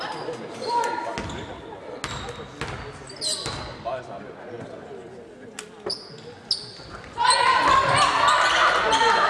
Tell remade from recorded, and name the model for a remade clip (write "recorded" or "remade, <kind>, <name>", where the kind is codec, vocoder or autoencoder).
recorded